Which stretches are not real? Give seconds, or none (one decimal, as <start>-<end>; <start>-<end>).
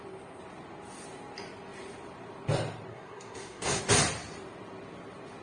2.9-3.8